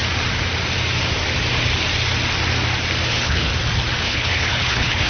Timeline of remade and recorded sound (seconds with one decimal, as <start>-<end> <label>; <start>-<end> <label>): 0.0-3.1 recorded; 3.1-3.5 remade; 3.5-4.0 recorded; 4.0-5.1 remade

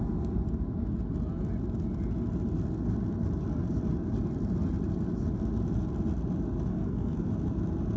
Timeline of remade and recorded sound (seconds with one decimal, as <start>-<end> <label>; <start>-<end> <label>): 0.0-6.7 recorded; 6.7-7.3 remade; 7.3-8.0 recorded